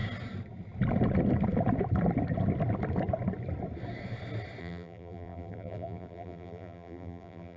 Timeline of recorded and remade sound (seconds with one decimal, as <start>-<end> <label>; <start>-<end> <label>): 0.0-4.6 recorded; 4.6-7.6 remade

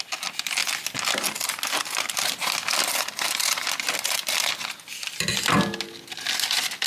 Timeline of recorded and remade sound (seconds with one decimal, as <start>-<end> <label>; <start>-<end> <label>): 0.0-0.6 recorded; 0.6-4.7 remade; 4.7-6.9 recorded

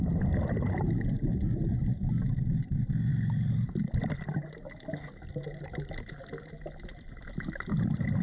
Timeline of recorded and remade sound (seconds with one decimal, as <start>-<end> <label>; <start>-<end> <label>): 0.0-8.2 recorded

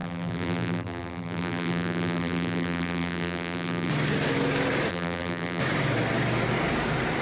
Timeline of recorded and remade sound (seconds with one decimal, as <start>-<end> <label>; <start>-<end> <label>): 0.0-3.9 remade; 3.9-4.9 recorded; 4.9-5.6 remade; 5.6-7.2 recorded

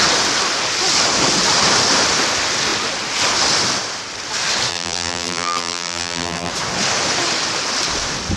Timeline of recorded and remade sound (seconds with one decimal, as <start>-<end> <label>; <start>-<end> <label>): 0.0-4.7 recorded; 4.7-6.5 remade; 6.5-8.4 recorded

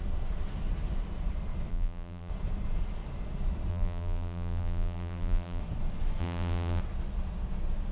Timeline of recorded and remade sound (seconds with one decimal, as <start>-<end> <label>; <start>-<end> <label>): 0.0-1.7 recorded; 1.7-2.3 remade; 2.3-3.7 recorded; 3.7-5.6 remade; 5.6-6.2 recorded; 6.2-6.8 remade; 6.8-7.9 recorded